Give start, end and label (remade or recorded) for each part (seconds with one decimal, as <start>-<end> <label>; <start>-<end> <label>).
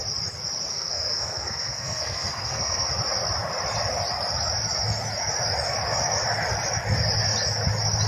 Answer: 0.0-0.7 recorded; 0.7-2.9 remade; 2.9-8.1 recorded